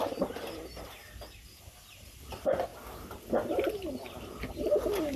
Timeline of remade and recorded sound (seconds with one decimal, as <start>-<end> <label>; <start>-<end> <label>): 0.0-5.2 recorded